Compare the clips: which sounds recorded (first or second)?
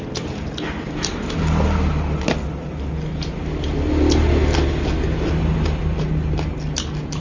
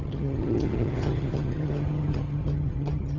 first